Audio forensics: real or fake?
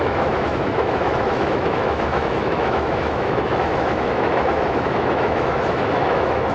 fake